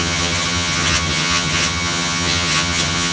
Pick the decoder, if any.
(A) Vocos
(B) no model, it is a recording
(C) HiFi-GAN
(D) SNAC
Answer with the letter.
C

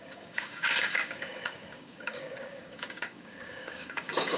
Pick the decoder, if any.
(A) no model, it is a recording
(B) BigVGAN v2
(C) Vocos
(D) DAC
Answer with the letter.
D